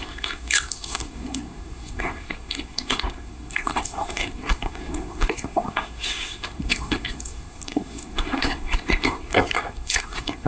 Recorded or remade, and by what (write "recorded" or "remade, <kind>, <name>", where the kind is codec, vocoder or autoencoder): remade, codec, SNAC